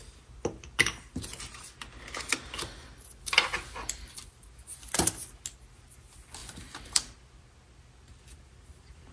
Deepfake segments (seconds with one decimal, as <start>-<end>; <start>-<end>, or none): none